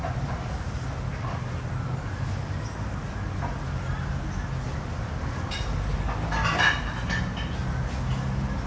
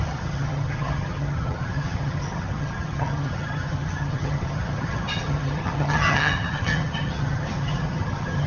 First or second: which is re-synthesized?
second